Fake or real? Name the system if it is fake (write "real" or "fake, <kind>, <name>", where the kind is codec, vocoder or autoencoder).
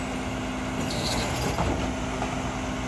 real